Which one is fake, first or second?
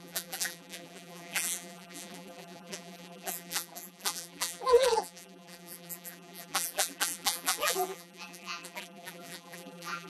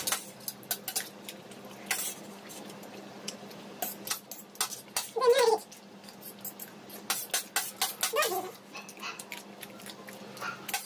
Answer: first